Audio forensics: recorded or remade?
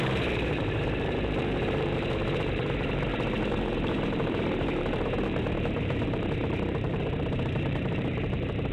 remade